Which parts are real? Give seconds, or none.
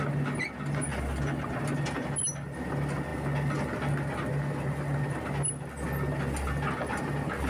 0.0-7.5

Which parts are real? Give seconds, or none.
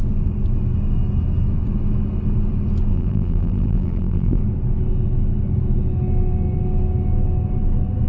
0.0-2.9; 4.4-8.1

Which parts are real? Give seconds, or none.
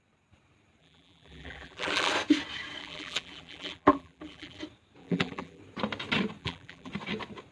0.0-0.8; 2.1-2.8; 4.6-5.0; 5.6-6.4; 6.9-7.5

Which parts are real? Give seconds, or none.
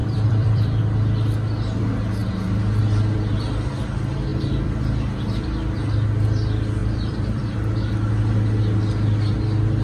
0.8-4.3; 4.8-6.8; 7.4-9.8